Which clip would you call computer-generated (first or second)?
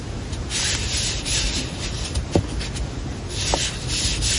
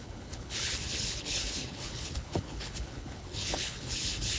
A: second